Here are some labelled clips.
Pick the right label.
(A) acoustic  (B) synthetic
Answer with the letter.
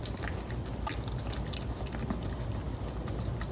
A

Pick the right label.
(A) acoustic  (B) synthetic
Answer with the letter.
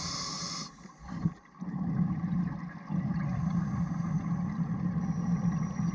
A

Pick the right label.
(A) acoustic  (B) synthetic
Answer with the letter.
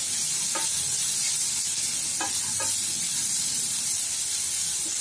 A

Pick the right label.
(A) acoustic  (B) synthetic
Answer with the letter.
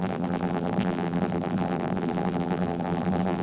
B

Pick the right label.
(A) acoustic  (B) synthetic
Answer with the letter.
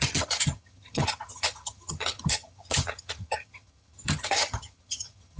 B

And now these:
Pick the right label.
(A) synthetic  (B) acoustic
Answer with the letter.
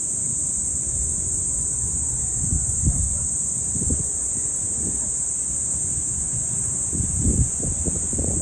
A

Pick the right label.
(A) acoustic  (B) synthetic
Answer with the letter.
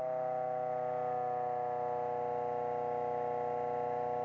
A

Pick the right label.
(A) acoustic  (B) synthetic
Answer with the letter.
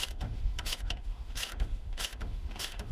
B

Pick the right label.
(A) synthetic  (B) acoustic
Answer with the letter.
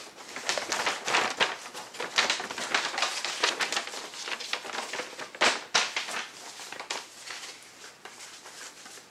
B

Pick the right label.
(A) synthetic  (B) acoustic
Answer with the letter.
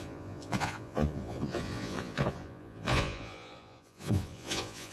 A